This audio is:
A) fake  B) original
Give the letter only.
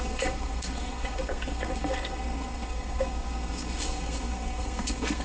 A